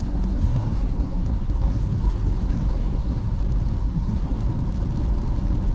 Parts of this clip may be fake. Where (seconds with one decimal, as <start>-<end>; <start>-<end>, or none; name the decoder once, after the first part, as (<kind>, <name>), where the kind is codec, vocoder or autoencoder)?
0.0-3.4 (codec, SNAC); 3.8-4.4